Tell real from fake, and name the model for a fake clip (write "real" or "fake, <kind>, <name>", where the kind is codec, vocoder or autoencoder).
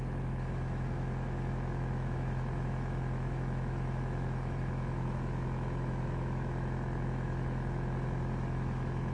fake, autoencoder, DAC-VAE